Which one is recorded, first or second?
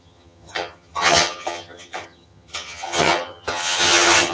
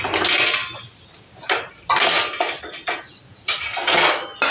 second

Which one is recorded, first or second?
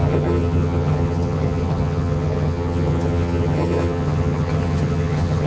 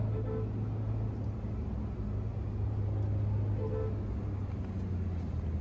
second